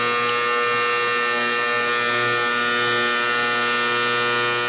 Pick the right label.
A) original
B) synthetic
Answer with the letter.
A